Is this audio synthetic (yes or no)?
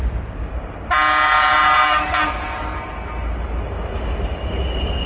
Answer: no